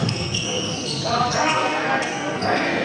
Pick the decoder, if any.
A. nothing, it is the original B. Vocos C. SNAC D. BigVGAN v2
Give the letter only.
C